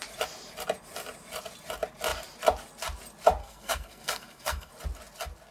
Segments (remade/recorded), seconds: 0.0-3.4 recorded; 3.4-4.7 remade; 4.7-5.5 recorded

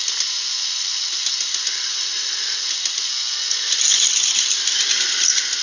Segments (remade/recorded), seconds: 0.0-5.6 recorded

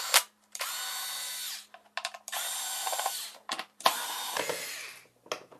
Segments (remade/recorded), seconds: 0.0-2.8 recorded; 2.8-4.3 remade; 4.3-5.6 recorded

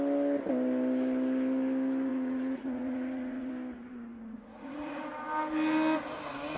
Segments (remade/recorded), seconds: 0.0-2.1 recorded; 2.1-3.5 remade; 3.5-4.1 recorded; 4.1-5.0 remade; 5.0-6.6 recorded

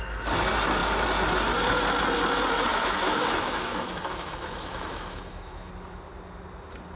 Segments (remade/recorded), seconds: 0.0-2.7 recorded; 2.7-5.7 remade; 5.7-7.0 recorded

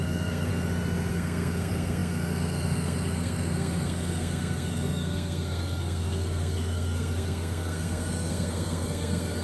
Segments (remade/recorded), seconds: 0.0-0.5 remade; 0.5-1.1 recorded; 1.1-9.4 remade